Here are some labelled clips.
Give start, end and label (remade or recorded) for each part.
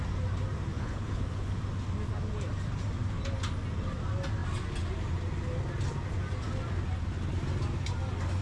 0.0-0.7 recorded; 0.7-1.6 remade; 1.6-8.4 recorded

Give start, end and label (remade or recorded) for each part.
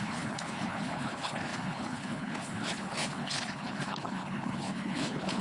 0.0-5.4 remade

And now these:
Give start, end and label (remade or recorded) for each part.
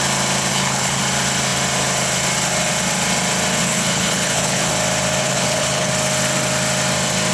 0.0-0.5 recorded; 0.5-1.0 remade; 1.0-3.6 recorded; 3.6-4.7 remade; 4.7-5.2 recorded; 5.2-5.9 remade; 5.9-7.3 recorded